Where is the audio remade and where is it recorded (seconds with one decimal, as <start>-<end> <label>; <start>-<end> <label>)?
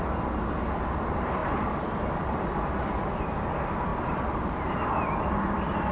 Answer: 0.0-1.4 recorded; 1.4-2.0 remade; 2.0-3.9 recorded; 3.9-4.5 remade; 4.5-5.9 recorded